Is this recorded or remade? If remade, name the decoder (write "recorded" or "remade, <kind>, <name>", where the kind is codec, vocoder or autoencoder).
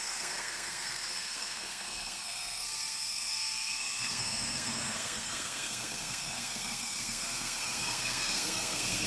remade, codec, SNAC